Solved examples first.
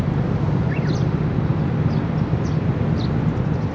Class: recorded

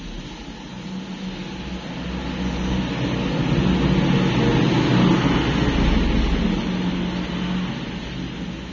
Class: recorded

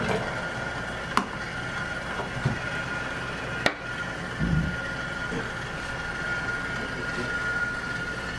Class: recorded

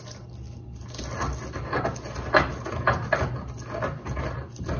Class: recorded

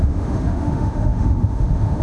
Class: remade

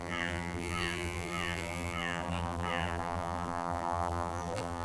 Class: remade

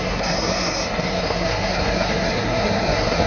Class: remade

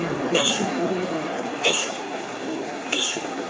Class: remade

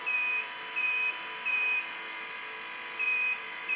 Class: remade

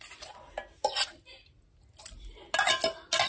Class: recorded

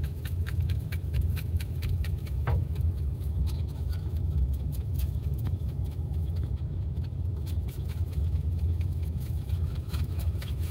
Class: remade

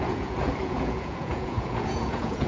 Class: remade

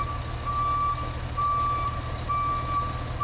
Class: recorded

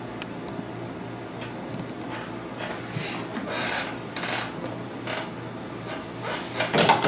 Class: recorded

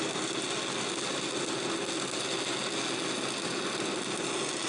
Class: recorded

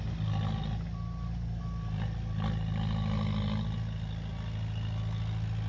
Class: recorded